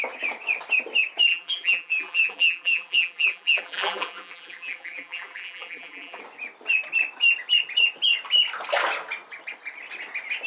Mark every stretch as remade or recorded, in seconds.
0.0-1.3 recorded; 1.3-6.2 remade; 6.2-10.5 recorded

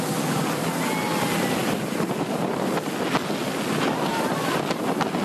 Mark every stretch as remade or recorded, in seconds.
0.0-1.6 recorded; 1.6-3.0 remade; 3.0-4.1 recorded; 4.1-4.8 remade; 4.8-5.2 recorded

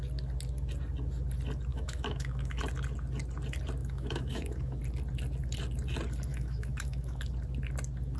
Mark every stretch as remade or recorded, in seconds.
0.0-1.7 recorded; 1.7-2.6 remade; 2.6-3.8 recorded; 3.8-4.8 remade; 4.8-6.3 recorded; 6.3-7.2 remade; 7.2-8.2 recorded

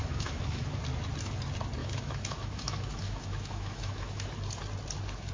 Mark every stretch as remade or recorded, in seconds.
0.0-0.8 remade; 0.8-1.8 recorded; 1.8-4.3 remade; 4.3-5.3 recorded